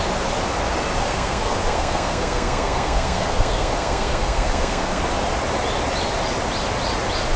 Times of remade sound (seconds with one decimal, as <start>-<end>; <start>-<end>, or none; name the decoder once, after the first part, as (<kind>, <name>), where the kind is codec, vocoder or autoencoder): 1.0-5.0 (codec, SNAC)